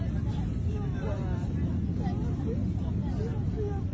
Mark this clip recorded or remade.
recorded